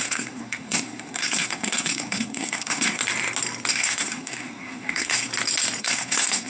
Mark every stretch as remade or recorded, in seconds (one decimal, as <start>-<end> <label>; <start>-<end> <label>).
0.0-3.0 remade; 3.0-3.7 recorded; 3.7-5.3 remade; 5.3-5.8 recorded; 5.8-6.5 remade